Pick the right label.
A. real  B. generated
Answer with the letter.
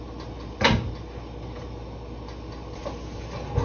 A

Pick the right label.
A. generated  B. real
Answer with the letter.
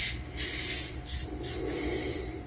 B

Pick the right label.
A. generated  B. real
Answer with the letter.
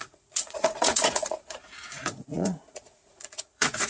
A